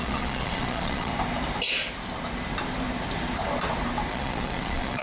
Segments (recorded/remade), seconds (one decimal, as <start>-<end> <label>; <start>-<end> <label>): 0.0-1.1 remade; 1.1-4.1 recorded; 4.1-5.0 remade